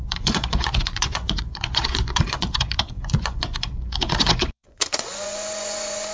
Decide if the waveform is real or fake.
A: fake